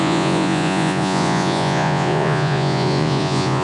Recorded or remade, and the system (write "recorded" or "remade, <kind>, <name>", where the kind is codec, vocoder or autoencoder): remade, vocoder, Vocos